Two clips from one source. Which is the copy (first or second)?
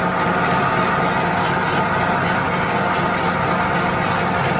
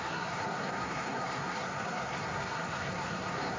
second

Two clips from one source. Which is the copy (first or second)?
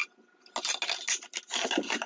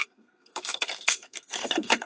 second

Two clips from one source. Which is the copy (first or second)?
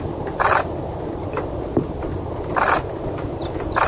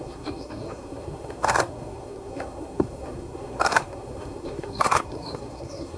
second